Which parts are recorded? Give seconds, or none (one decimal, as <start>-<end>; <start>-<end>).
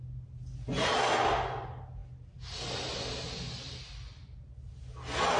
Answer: 0.0-5.4